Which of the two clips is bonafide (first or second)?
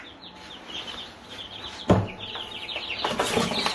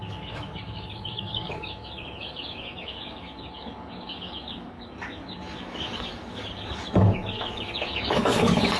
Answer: first